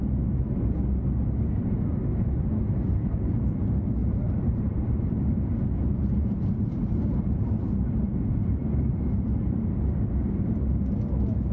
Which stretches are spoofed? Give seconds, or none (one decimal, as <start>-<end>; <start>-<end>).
4.0-7.3; 8.4-10.6